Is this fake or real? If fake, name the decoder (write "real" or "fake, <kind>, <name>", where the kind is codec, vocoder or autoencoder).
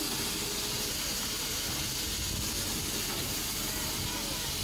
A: real